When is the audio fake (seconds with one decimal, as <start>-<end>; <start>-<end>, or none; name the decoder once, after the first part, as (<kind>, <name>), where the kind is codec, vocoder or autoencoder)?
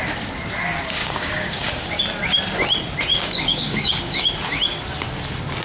1.0-2.0 (codec, DAC); 3.1-4.3